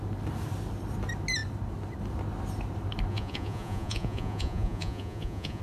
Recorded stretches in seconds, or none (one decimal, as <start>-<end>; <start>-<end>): 0.0-3.1